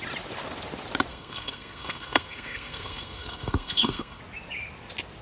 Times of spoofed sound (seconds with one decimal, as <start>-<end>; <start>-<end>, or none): 1.1-4.2